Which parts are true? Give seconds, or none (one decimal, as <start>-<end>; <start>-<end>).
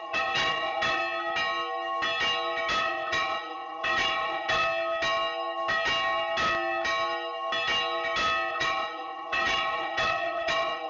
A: 1.0-2.8; 4.6-8.5